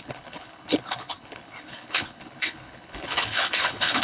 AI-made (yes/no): yes